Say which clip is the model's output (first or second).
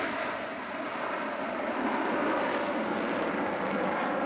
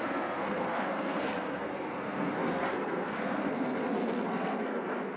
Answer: second